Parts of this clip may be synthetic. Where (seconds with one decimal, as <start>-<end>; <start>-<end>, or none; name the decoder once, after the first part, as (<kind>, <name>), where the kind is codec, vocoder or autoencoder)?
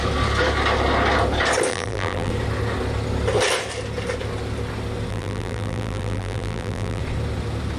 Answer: 1.7-2.3 (vocoder, BigVGAN v2); 5.1-7.0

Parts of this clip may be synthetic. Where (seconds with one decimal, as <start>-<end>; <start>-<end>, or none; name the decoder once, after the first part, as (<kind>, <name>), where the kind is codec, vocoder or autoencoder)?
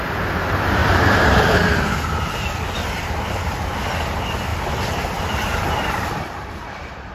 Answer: 0.8-3.7 (vocoder, BigVGAN v2); 4.5-7.1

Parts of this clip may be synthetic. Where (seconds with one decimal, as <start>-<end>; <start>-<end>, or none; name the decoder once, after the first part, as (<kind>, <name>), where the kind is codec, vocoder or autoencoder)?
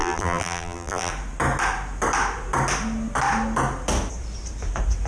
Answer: 0.0-1.1 (vocoder, BigVGAN v2)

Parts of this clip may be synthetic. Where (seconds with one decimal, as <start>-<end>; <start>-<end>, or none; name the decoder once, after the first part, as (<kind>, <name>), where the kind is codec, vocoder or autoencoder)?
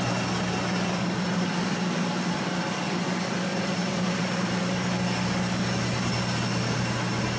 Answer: 3.5-4.6 (vocoder, BigVGAN v2)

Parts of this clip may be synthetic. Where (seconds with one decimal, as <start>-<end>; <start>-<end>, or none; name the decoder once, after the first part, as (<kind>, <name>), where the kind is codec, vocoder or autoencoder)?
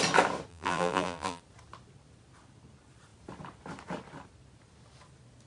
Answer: 0.5-1.4 (vocoder, BigVGAN v2)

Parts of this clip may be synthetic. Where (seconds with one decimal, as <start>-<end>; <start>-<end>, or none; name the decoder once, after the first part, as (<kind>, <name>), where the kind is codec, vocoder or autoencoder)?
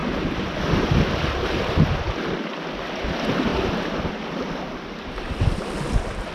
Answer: none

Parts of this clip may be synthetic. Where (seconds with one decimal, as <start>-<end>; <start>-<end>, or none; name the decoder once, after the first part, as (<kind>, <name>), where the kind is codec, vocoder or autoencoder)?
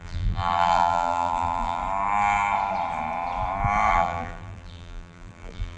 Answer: 0.0-1.8 (vocoder, BigVGAN v2); 3.9-5.8